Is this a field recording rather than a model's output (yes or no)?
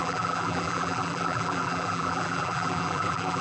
no